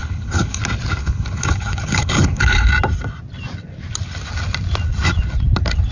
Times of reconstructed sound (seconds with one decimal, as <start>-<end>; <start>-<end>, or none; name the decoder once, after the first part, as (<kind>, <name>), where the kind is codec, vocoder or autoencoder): 0.0-0.6 (codec, HILCodec); 1.0-2.7

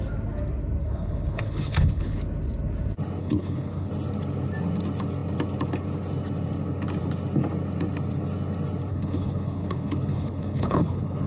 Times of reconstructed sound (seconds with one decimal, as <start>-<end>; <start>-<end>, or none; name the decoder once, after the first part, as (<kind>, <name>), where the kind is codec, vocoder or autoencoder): 0.8-2.2 (codec, HILCodec); 3.2-3.9; 8.9-11.3

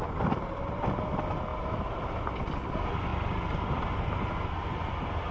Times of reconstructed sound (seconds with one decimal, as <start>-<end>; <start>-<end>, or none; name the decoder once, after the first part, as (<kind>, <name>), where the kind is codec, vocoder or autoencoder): none

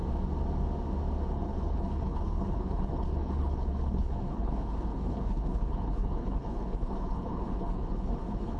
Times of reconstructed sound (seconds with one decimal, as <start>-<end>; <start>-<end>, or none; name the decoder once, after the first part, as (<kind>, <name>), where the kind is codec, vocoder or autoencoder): 1.3-8.6 (codec, HILCodec)

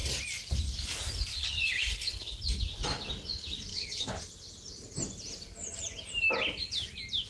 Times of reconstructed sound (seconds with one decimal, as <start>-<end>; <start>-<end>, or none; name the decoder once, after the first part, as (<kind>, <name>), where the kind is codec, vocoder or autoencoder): 1.3-2.4 (codec, HILCodec); 3.7-4.2

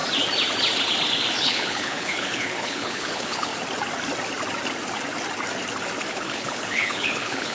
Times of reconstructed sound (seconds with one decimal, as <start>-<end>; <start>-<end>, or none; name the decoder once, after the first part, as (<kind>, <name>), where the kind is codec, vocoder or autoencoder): 1.4-3.5 (codec, HILCodec); 6.1-7.5

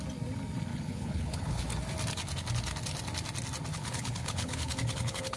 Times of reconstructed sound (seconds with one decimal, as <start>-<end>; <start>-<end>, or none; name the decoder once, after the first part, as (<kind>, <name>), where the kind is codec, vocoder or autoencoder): 0.7-1.6 (codec, HILCodec); 3.7-5.4

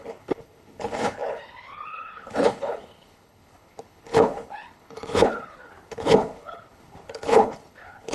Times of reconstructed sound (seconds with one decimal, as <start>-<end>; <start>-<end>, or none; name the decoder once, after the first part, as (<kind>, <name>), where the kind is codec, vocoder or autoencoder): 0.0-8.1 (codec, HILCodec)